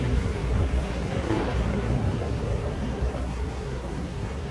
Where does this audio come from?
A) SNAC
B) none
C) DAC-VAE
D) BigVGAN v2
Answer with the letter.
A